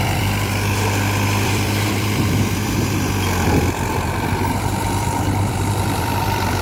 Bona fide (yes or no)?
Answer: no